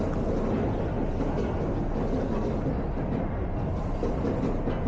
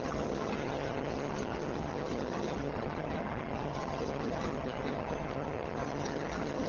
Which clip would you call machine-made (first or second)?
second